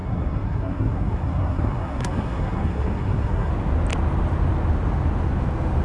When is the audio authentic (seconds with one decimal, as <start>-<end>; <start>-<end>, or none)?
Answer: 3.5-5.8